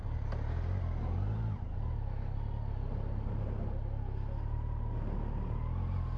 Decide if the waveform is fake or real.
real